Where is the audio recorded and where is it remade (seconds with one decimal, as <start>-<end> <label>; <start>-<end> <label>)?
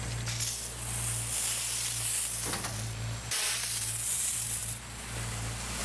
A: 0.0-5.8 recorded